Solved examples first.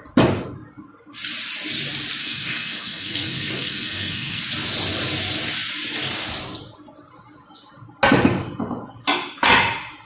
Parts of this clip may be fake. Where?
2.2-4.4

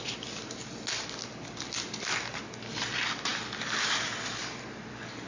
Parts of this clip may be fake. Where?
none

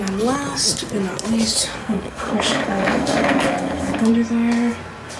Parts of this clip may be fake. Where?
1.8-4.1

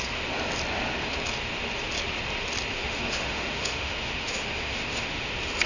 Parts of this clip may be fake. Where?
2.7-5.3

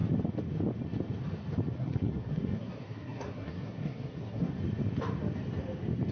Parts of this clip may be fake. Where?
1.8-4.6

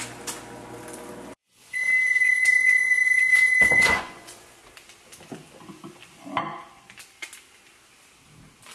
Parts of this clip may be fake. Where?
1.4-4.6